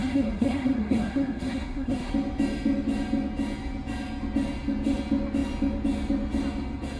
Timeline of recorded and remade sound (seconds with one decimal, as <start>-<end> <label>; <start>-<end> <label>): 0.0-2.1 remade; 2.1-7.0 recorded